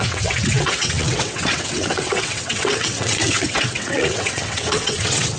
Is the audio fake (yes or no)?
yes